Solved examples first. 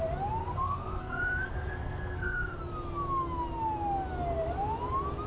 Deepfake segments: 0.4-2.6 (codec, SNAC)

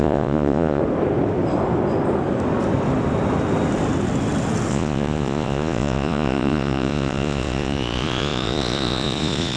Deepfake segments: 0.0-0.8 (vocoder, Vocos); 4.7-9.6

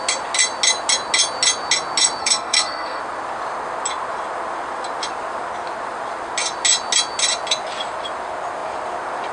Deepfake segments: 2.2-3.0 (codec, SNAC)

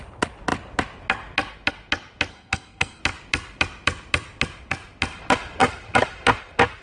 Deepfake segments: 2.3-3.0 (codec, SNAC)

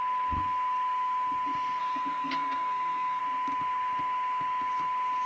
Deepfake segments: 1.8-3.2 (codec, SNAC)

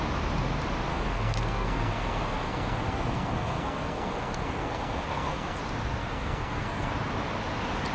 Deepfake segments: 0.9-5.6 (codec, SNAC); 6.0-6.9

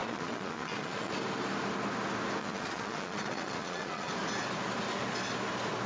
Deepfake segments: 0.0-1.1 (vocoder, Vocos); 2.4-4.1

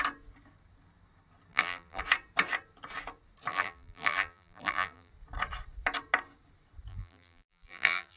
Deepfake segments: 1.5-2.0 (vocoder, BigVGAN v2); 3.5-5.1; 6.9-8.2